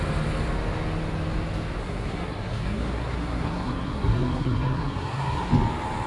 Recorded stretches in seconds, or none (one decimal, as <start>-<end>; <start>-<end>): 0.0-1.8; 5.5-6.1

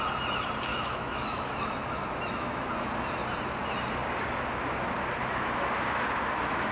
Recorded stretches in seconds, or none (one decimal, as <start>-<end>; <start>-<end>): 0.0-0.7; 2.7-5.2; 6.1-6.7

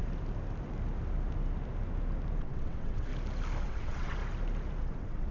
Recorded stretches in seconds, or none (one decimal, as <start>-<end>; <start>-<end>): 0.0-2.4; 3.1-3.6; 4.2-4.8

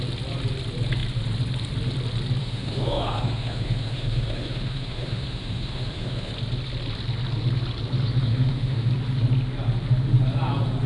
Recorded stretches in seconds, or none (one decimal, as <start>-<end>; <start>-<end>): 0.0-2.4; 6.3-8.2; 8.9-10.9